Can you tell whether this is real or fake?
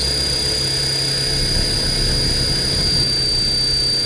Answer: real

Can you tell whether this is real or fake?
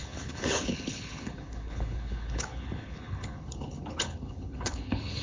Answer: fake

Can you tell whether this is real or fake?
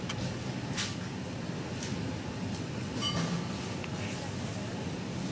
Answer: real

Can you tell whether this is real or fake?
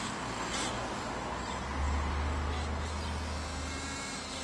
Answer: real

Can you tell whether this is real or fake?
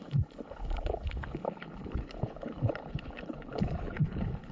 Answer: fake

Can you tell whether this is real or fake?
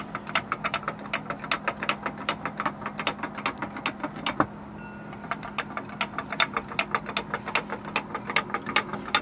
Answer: real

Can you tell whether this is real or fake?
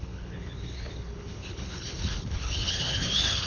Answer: fake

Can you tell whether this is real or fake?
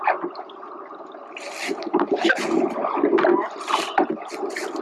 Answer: real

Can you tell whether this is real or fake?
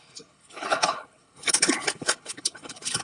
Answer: fake